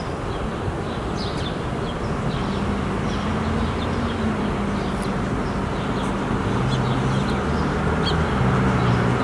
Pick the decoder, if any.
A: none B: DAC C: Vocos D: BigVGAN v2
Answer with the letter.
A